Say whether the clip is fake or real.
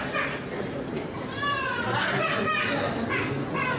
real